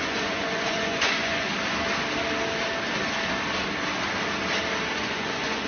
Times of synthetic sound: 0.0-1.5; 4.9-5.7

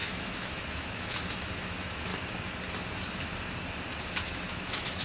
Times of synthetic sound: 0.0-2.1; 4.0-5.0

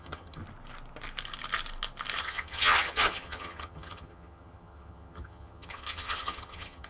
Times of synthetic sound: 0.0-0.4; 2.2-6.9

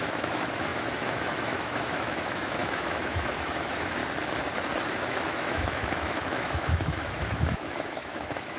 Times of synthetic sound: 0.0-4.0; 4.9-8.6

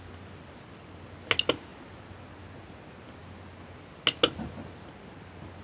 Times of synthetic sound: none